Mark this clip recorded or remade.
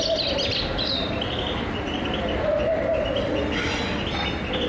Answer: recorded